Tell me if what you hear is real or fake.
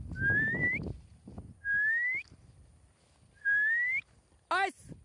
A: real